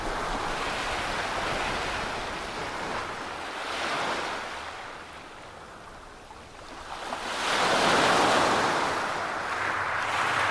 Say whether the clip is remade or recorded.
recorded